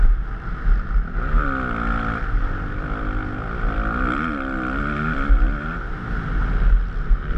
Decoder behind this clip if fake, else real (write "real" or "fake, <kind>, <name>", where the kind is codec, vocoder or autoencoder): real